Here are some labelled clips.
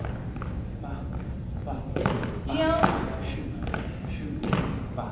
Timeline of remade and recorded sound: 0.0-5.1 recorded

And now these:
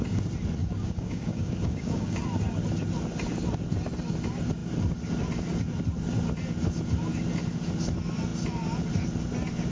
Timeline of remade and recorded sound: 0.0-0.6 recorded; 0.6-2.2 remade; 2.2-9.7 recorded